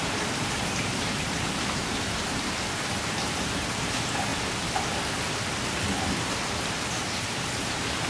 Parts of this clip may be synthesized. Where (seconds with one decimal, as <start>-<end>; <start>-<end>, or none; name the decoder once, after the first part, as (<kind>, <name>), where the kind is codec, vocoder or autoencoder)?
0.0-4.3 (vocoder, BigVGAN v2); 6.8-8.1